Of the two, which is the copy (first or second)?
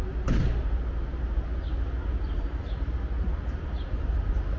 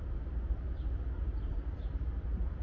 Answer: second